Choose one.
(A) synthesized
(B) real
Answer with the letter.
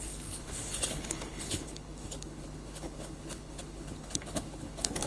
A